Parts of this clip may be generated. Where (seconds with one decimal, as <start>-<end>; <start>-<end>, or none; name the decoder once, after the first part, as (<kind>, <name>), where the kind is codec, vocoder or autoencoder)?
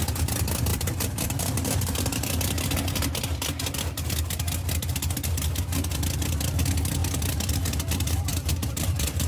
0.7-2.6 (vocoder, BigVGAN v2); 8.3-9.3